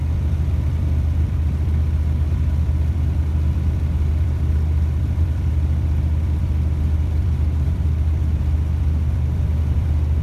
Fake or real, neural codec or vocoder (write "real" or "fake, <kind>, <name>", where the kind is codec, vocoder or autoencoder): fake, vocoder, BigVGAN v2